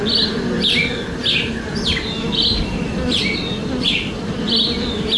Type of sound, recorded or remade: recorded